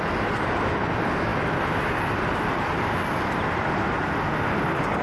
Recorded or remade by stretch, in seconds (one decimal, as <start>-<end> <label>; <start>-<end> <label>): 0.0-5.0 recorded